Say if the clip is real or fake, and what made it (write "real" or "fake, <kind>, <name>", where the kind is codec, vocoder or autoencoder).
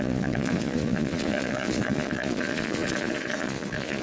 fake, vocoder, Vocos